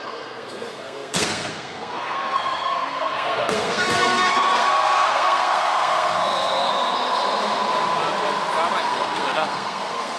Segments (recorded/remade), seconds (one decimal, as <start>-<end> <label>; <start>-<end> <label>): 0.0-6.7 remade; 6.7-8.8 recorded; 8.8-10.2 remade